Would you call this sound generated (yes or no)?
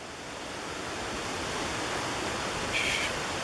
no